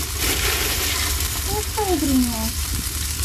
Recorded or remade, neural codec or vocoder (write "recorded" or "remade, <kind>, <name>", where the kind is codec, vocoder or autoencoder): recorded